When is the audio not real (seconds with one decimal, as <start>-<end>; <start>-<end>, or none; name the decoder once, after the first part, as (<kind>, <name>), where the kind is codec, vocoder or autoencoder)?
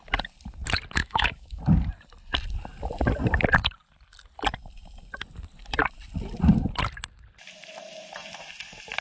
1.0-1.6 (autoencoder, DAC-VAE)